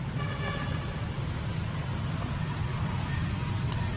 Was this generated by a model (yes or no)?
no